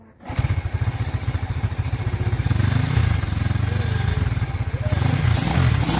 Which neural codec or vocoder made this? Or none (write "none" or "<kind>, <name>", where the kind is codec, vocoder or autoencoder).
none